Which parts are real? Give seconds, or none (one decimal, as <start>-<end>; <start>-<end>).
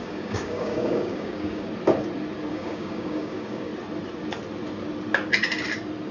1.7-2.5; 3.7-6.1